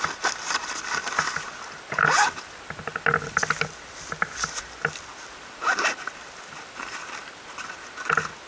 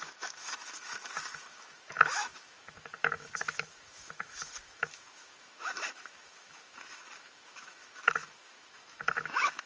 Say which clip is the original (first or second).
first